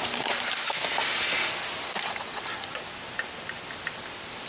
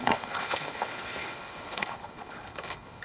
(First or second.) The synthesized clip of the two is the second